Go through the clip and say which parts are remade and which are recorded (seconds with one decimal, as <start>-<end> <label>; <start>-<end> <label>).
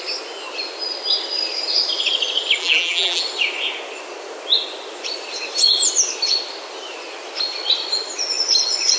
0.0-2.6 recorded; 2.6-3.2 remade; 3.2-9.0 recorded